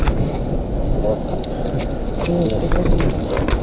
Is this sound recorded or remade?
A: recorded